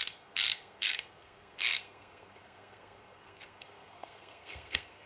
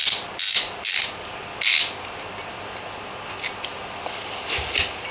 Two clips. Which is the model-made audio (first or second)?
first